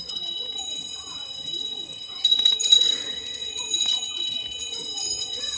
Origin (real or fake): fake